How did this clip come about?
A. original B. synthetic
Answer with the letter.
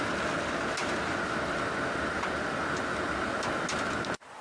A